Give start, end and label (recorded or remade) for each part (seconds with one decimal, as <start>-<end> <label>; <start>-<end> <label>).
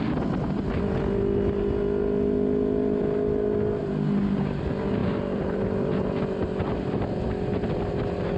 0.0-5.0 recorded; 5.0-5.6 remade; 5.6-8.4 recorded